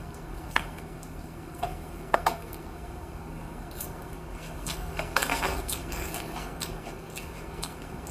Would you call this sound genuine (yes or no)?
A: no